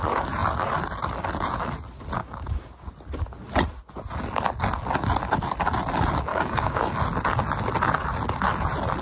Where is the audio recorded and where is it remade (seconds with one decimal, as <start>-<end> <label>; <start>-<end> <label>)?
0.0-2.2 recorded; 2.2-2.9 remade; 2.9-6.3 recorded; 6.3-6.9 remade; 6.9-9.0 recorded